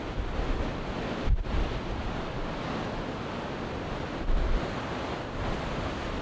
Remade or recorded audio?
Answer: recorded